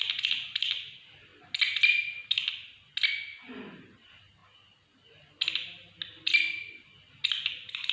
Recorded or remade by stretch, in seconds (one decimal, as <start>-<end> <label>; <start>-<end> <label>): 0.0-7.9 recorded